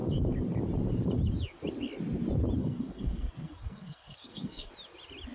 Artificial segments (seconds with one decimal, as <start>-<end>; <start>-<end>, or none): 2.6-4.7